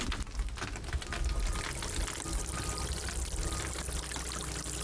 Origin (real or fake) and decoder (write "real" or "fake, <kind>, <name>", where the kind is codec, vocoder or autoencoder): real